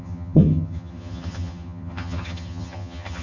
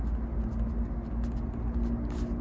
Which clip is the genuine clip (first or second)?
second